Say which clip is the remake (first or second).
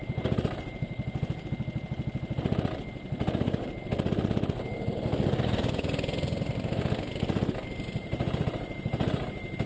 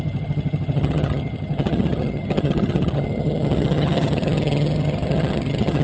second